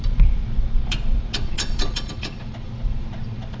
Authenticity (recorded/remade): remade